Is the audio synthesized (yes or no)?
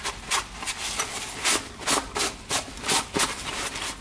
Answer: no